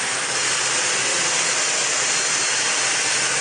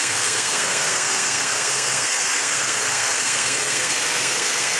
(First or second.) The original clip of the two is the first